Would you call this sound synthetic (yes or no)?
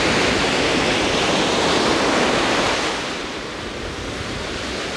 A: no